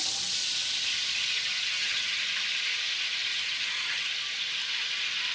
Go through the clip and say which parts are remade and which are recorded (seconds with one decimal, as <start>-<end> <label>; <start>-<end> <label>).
0.0-1.6 recorded; 1.6-2.2 remade; 2.2-3.3 recorded; 3.3-4.1 remade; 4.1-5.3 recorded